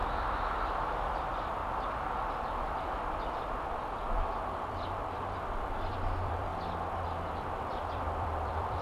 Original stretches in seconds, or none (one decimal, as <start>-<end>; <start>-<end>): 1.6-4.4; 6.5-7.3